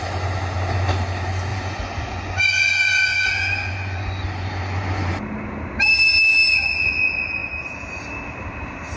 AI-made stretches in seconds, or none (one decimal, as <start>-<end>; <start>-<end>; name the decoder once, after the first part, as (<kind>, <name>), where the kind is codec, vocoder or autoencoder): 1.5-5.2 (vocoder, Vocos)